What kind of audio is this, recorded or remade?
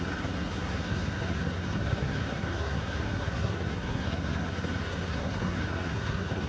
remade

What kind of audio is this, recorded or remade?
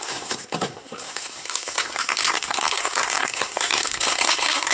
remade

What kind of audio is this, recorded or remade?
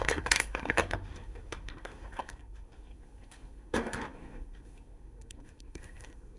remade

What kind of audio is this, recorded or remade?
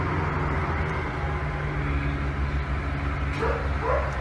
recorded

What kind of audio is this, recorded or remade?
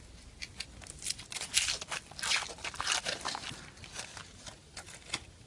recorded